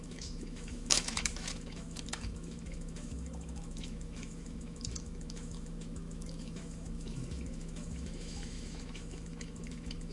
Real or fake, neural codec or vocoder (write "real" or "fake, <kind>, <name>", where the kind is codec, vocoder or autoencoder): fake, autoencoder, DAC-VAE